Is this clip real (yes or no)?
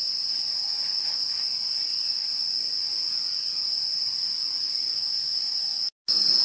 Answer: yes